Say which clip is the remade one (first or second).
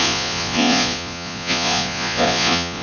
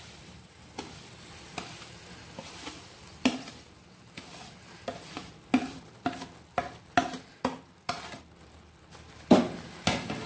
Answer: first